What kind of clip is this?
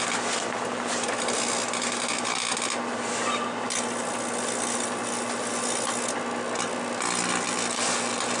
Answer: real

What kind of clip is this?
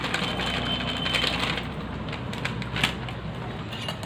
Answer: real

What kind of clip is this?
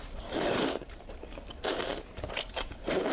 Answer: fake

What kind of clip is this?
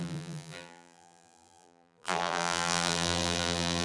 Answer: fake